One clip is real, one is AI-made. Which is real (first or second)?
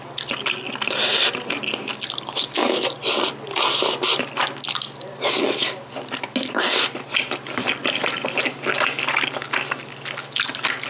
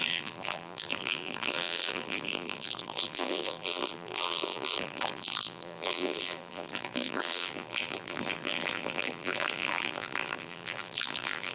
first